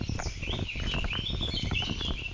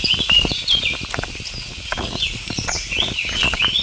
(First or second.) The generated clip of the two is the second